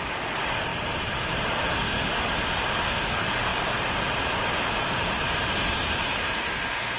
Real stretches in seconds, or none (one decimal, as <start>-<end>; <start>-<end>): 0.0-0.7; 1.6-3.5; 6.5-7.0